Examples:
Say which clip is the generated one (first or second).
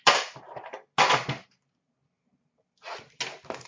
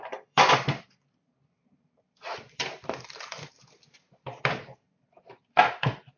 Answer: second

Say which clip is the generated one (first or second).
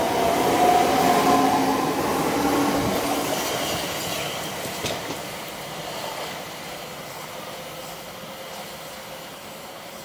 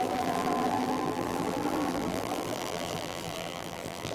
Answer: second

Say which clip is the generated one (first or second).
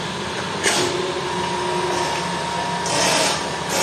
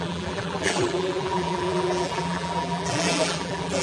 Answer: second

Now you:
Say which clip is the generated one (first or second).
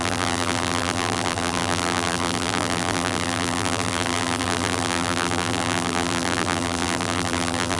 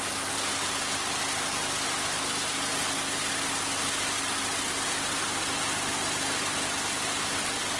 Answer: first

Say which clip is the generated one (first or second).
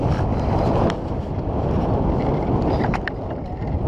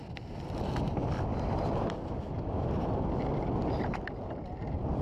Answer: first